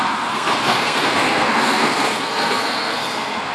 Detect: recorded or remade remade